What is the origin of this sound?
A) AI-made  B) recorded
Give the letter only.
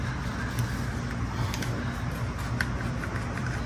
B